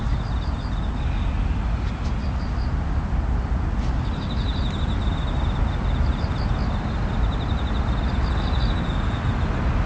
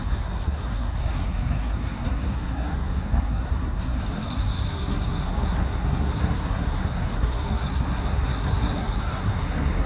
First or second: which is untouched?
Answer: first